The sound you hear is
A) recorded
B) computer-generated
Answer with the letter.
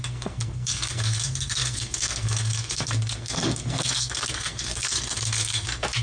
B